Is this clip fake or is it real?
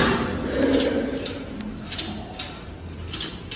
real